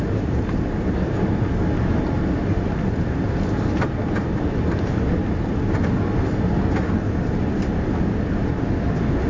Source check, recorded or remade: recorded